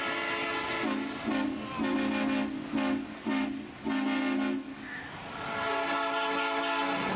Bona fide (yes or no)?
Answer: yes